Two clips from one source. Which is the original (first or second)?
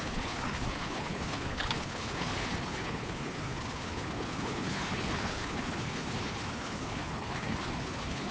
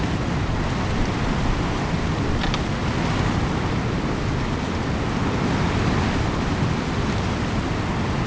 second